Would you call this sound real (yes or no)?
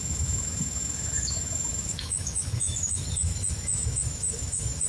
no